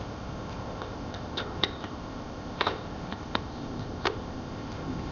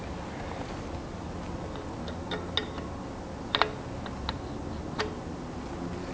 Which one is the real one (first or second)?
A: second